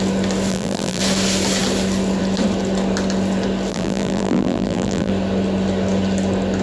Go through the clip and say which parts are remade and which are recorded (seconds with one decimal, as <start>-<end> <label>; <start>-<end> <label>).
0.0-0.5 recorded; 0.5-1.0 remade; 1.0-3.7 recorded; 3.7-5.1 remade; 5.1-6.6 recorded